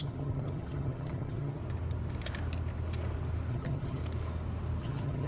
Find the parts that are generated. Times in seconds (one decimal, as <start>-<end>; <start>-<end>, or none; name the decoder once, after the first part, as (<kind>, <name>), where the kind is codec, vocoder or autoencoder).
0.0-1.6 (vocoder, HiFi-GAN); 3.5-4.0; 4.8-5.3